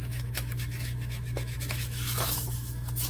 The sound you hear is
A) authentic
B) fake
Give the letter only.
B